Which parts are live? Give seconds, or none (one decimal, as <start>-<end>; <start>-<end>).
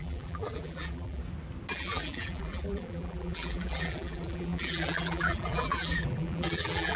1.2-1.7